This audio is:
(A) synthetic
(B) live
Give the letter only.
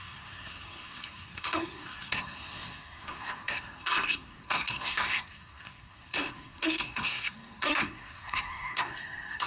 A